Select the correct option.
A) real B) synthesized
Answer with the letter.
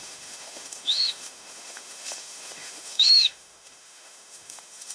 B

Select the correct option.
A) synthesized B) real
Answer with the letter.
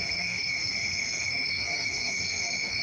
A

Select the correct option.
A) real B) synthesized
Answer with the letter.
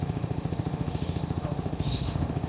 B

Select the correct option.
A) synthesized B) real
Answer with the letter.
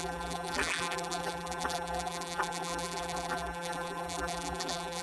A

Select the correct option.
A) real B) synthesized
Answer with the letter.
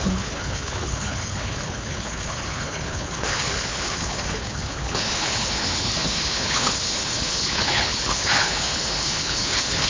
B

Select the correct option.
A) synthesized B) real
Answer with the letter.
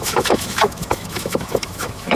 A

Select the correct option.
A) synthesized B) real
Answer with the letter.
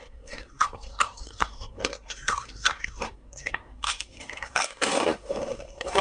A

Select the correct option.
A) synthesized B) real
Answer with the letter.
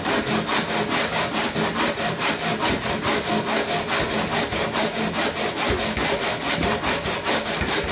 B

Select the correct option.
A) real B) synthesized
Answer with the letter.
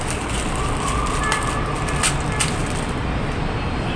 A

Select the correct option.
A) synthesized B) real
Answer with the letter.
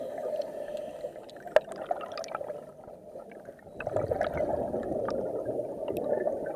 B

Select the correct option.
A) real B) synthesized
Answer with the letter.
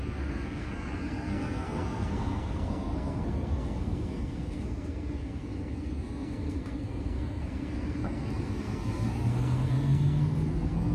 B